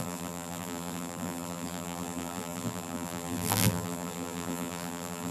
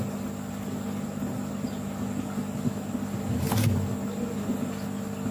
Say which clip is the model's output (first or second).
first